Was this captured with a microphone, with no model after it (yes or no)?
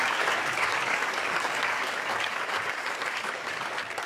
no